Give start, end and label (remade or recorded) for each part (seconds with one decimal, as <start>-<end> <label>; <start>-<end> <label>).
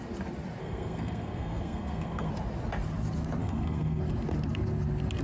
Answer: 0.0-0.6 recorded; 0.6-2.3 remade; 2.3-3.4 recorded; 3.4-4.0 remade; 4.0-5.2 recorded